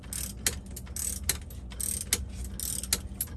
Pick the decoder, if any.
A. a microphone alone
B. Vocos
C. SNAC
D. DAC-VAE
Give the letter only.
A